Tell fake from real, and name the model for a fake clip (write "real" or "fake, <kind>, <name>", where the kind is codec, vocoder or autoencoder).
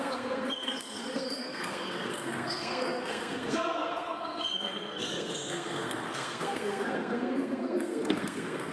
fake, codec, SNAC